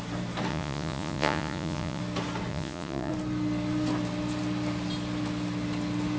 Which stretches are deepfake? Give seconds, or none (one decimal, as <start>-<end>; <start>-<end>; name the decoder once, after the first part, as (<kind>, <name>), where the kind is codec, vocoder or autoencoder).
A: 0.5-2.0 (vocoder, Vocos); 2.5-3.1